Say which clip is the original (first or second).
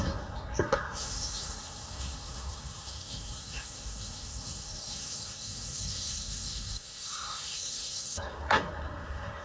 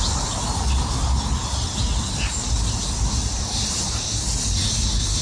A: second